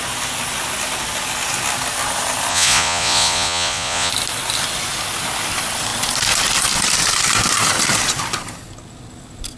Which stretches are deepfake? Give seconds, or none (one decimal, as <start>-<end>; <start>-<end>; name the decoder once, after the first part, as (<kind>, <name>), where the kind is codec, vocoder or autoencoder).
2.5-4.1 (vocoder, Vocos)